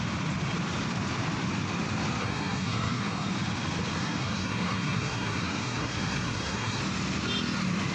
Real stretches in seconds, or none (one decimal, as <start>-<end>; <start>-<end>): 0.0-2.2; 3.3-4.0; 6.8-7.9